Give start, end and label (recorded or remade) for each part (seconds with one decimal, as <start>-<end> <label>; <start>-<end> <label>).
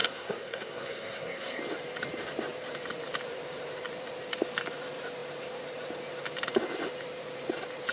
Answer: 0.0-1.6 remade; 1.6-7.9 recorded